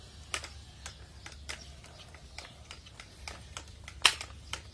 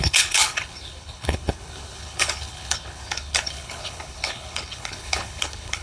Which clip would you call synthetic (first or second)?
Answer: second